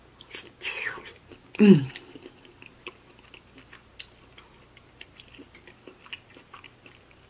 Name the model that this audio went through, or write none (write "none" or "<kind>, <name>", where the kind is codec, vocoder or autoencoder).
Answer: none